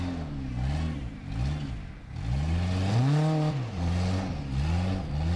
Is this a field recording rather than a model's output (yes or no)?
yes